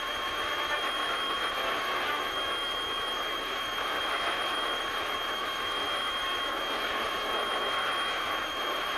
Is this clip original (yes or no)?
no